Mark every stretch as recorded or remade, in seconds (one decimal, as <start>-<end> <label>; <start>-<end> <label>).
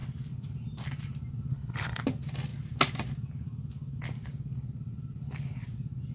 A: 0.0-1.5 recorded; 1.5-2.0 remade; 2.0-6.1 recorded